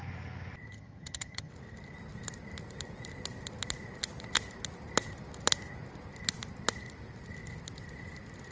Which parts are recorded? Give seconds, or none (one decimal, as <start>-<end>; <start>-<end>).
0.0-0.7; 1.5-8.5